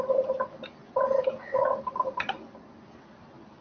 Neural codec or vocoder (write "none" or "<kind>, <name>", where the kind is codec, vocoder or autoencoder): none